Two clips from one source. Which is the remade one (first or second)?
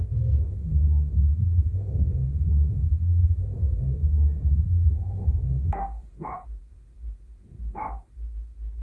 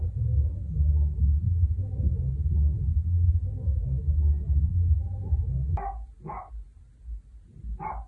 first